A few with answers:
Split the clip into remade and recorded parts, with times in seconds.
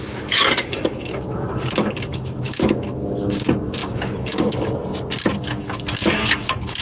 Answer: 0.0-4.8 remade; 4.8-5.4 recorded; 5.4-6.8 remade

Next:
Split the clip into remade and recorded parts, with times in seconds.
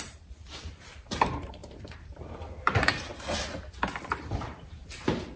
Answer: 0.0-3.1 remade; 3.1-4.0 recorded; 4.0-4.8 remade; 4.8-5.4 recorded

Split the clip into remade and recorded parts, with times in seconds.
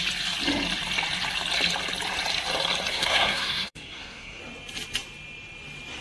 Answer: 0.0-2.9 recorded; 2.9-4.4 remade; 4.4-6.0 recorded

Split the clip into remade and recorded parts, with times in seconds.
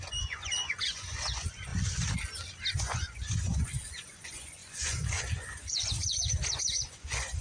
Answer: 0.0-1.7 remade; 1.7-2.7 recorded; 2.7-7.4 remade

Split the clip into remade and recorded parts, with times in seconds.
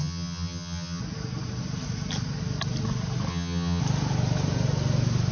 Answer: 0.0-1.0 remade; 1.0-3.3 recorded; 3.3-3.8 remade; 3.8-5.3 recorded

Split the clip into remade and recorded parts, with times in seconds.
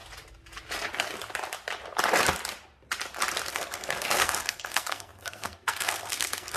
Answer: 0.0-3.5 recorded; 3.5-6.6 remade